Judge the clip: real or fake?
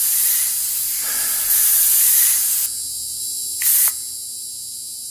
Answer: real